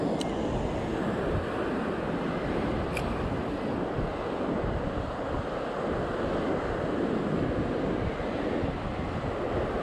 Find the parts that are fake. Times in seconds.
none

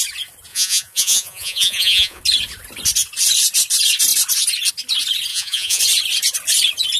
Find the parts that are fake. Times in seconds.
0.5-2.2; 5.3-5.8

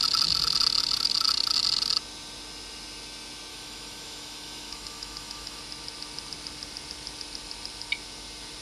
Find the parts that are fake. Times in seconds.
3.5-5.6